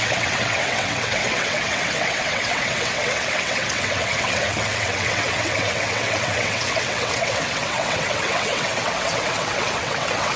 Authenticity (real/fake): fake